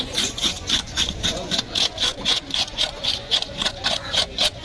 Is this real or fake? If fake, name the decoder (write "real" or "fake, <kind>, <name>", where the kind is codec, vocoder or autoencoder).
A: fake, vocoder, Vocos